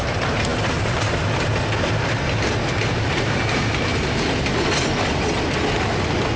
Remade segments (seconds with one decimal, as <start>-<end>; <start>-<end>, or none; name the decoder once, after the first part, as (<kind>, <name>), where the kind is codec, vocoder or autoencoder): none